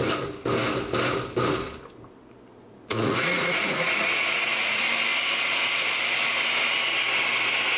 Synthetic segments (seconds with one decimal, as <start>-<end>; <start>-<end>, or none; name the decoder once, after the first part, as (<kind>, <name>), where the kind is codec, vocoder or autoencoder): 2.5-4.8 (vocoder, Vocos)